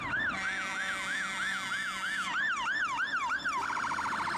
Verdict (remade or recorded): recorded